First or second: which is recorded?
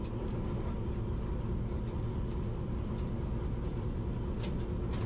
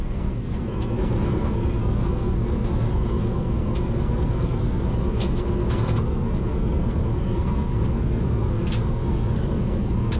first